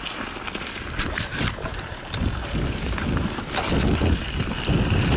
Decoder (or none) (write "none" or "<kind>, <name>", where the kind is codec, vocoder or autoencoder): none